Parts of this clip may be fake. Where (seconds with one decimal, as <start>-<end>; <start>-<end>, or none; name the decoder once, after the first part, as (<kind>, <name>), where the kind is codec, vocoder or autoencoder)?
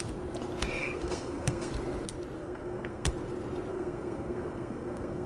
0.8-1.7 (codec, SNAC); 2.4-3.1; 3.7-5.3